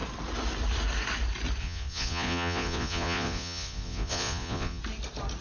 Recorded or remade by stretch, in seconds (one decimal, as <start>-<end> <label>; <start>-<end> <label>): 0.0-1.6 recorded; 1.6-4.8 remade; 4.8-5.4 recorded